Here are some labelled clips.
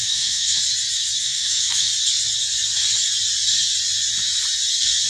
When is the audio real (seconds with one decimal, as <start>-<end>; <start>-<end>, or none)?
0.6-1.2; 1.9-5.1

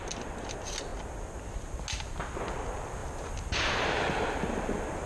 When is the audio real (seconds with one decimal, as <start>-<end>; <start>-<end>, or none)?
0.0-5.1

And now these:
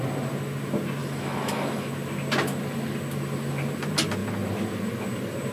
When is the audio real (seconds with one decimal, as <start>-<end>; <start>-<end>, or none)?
0.0-1.0; 1.9-5.5

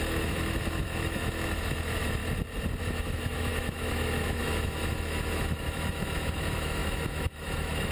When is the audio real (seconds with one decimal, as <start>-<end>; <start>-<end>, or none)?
2.2-2.8

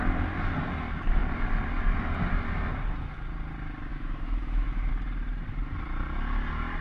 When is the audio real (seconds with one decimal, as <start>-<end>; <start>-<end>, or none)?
0.0-3.9; 4.9-6.8